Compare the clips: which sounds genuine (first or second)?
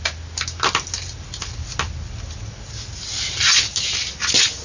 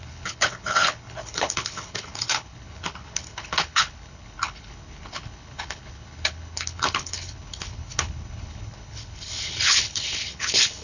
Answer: first